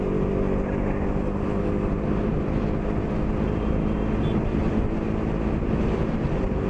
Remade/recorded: recorded